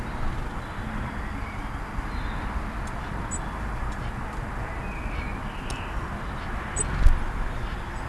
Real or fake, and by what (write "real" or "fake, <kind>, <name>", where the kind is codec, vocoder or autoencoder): real